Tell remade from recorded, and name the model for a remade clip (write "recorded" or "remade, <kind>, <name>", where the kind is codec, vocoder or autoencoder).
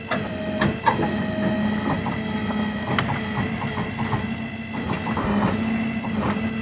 recorded